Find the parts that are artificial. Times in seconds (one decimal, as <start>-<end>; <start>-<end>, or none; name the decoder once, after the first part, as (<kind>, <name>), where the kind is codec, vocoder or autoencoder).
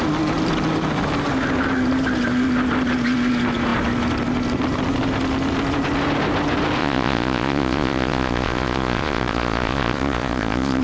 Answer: 6.8-10.8 (vocoder, Vocos)